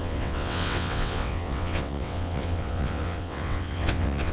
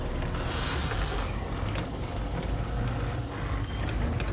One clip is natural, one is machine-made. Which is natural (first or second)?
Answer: second